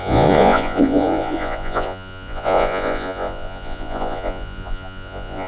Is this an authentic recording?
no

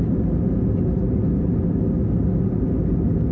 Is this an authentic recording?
yes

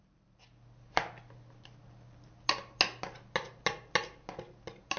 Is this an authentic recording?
yes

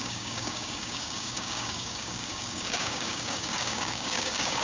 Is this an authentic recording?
no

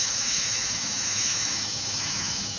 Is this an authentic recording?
no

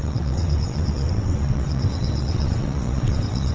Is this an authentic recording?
no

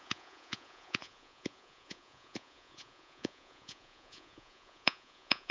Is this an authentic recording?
no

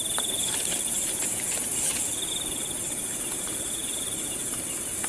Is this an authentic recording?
no